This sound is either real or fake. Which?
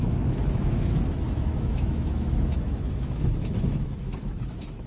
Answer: fake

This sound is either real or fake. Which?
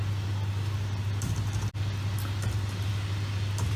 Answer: real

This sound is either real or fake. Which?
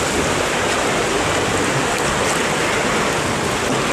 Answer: real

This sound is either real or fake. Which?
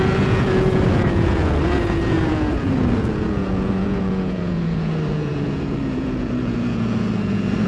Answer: fake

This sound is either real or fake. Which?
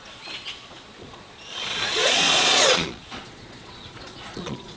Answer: fake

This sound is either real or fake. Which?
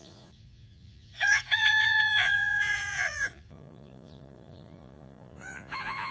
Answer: fake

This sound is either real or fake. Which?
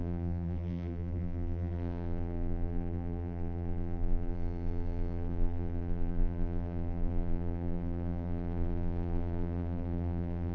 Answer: fake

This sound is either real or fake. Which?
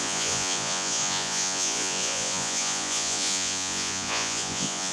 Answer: fake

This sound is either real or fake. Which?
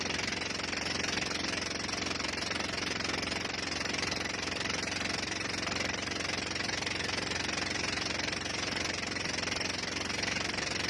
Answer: real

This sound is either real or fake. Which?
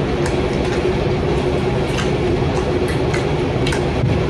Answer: real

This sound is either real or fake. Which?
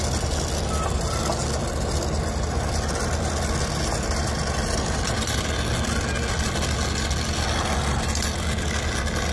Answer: real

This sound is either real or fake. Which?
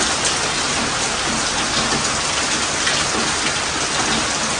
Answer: real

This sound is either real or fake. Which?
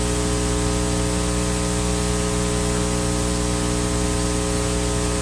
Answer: real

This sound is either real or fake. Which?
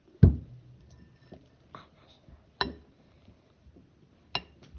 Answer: real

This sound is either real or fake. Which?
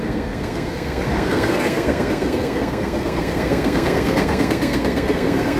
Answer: fake